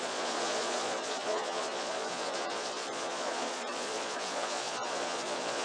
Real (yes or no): no